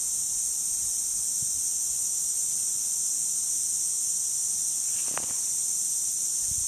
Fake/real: real